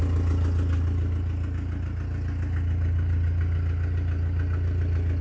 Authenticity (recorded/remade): recorded